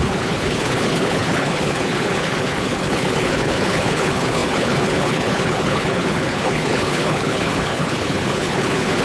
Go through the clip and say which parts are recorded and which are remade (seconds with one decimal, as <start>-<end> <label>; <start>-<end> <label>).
0.0-9.0 remade